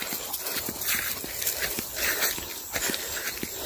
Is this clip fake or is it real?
real